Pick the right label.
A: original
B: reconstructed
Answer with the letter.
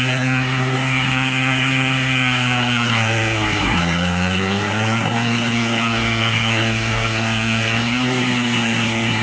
B